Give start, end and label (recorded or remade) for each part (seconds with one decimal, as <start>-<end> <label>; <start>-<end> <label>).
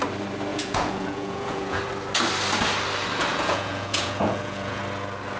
0.0-0.5 recorded; 0.5-1.8 remade; 1.8-3.3 recorded; 3.3-4.8 remade; 4.8-5.4 recorded